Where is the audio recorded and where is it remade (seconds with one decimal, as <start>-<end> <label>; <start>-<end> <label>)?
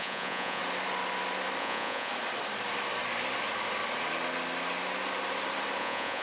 0.0-0.6 remade; 0.6-1.6 recorded; 1.6-2.1 remade; 2.1-5.8 recorded; 5.8-6.2 remade